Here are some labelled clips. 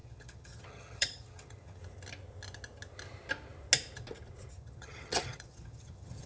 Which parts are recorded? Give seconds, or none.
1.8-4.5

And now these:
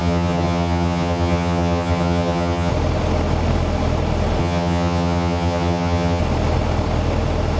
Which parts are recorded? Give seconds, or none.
2.7-4.4; 6.2-7.6

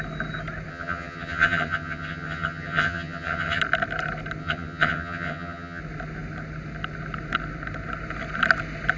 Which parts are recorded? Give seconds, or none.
0.0-0.7; 3.6-4.4; 5.8-9.0

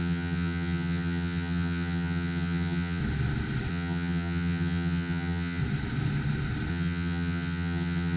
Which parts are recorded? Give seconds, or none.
3.0-3.7; 5.6-6.7